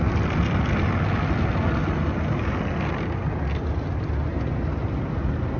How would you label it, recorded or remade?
recorded